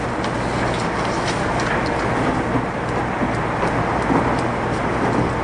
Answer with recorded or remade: recorded